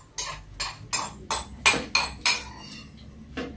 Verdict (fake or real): real